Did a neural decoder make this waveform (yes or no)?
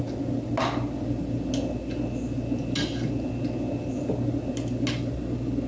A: no